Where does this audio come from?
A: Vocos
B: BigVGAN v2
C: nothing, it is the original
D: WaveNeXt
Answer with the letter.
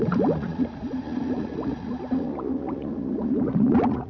A